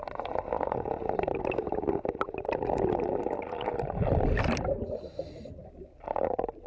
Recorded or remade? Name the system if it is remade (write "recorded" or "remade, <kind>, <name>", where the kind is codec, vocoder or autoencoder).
recorded